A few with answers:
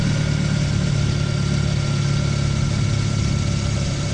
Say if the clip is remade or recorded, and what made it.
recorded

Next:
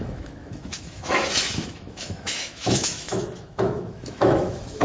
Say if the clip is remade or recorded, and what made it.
remade, autoencoder, DAC-VAE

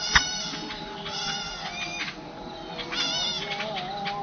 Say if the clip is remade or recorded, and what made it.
recorded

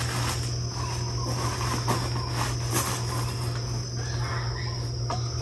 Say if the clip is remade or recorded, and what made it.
recorded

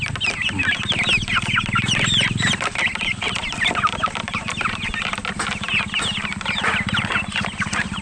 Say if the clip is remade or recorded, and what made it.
recorded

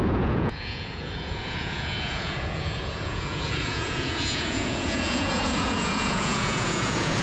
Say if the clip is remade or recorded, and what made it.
remade, vocoder, Vocos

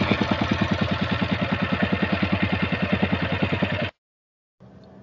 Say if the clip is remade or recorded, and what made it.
recorded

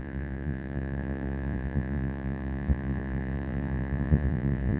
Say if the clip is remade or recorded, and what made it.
remade, vocoder, Vocos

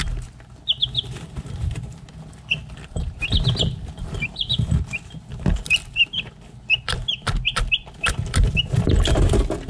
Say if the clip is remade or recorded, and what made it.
remade, vocoder, BigVGAN v2